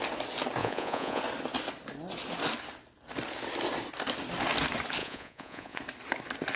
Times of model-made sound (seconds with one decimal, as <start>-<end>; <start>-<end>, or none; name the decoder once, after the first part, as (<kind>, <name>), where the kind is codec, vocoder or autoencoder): 0.6-1.2 (vocoder, Vocos); 5.0-5.8